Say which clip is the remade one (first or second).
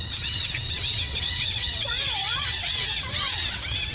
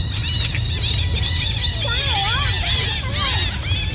first